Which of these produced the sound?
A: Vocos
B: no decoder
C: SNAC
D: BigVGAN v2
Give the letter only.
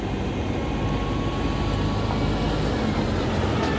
B